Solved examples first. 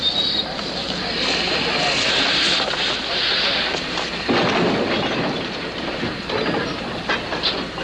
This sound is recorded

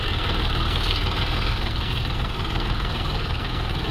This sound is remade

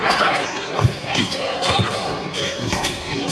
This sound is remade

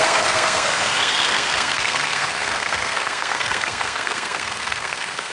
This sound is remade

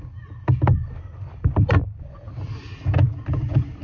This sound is recorded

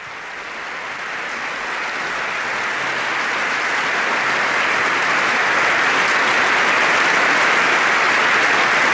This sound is recorded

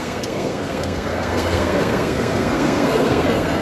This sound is remade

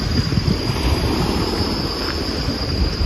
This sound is recorded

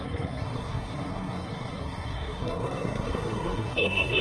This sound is remade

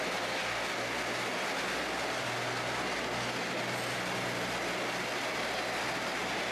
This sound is recorded